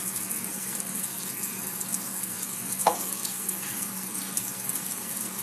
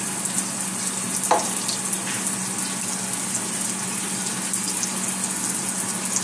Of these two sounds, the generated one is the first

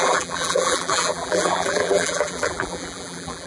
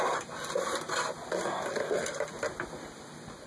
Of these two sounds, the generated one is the first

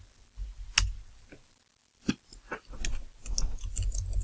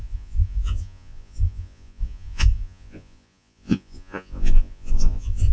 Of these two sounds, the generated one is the second